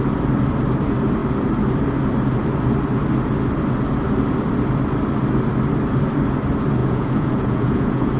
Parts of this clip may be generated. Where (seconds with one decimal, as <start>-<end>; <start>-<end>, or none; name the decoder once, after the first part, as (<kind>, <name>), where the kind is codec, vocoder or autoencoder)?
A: 6.8-8.2 (vocoder, Vocos)